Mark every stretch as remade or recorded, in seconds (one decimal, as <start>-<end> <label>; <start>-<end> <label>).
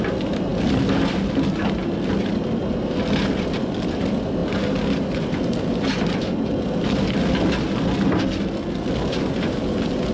0.0-10.1 recorded